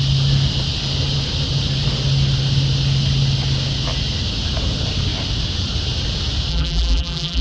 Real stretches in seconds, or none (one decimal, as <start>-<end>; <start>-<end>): 0.0-6.5